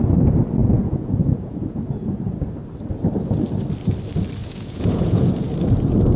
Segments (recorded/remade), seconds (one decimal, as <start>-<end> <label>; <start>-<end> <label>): 0.0-0.6 recorded; 0.6-2.4 remade; 2.4-4.4 recorded; 4.4-5.3 remade; 5.3-6.2 recorded